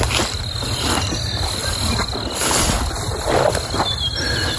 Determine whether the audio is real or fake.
real